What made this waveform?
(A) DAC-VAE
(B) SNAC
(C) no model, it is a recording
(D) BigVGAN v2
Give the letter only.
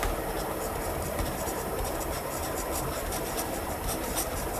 D